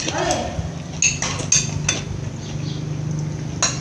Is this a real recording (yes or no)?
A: yes